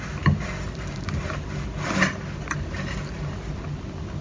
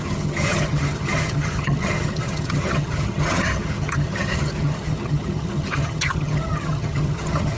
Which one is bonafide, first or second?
first